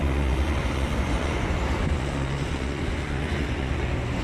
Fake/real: fake